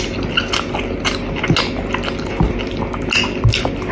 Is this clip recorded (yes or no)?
yes